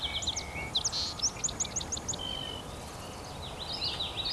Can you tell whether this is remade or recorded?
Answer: recorded